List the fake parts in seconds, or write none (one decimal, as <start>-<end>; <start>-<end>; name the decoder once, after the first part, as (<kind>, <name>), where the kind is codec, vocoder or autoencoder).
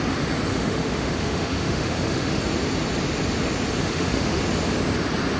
0.5-2.4 (autoencoder, DAC-VAE); 3.8-4.4